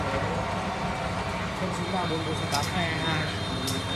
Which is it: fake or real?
real